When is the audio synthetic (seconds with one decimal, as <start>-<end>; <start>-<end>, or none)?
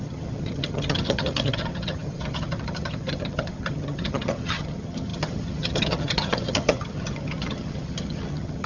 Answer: 0.0-8.7